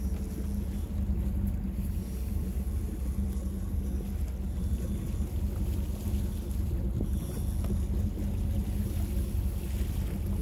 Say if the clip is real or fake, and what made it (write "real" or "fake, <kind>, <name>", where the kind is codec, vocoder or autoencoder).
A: real